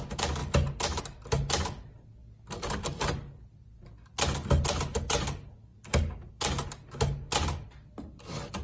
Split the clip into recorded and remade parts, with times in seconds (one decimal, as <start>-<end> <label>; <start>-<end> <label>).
0.0-8.6 recorded